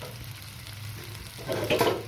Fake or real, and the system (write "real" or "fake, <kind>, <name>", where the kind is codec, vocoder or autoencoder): real